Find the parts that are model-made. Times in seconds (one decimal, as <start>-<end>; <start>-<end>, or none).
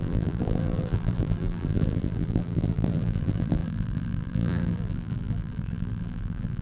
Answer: 0.0-6.6